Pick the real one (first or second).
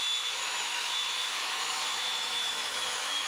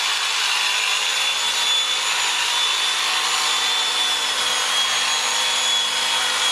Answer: second